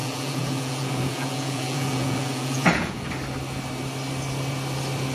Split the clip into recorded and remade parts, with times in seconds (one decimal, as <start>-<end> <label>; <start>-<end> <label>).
0.0-3.1 remade; 3.1-5.1 recorded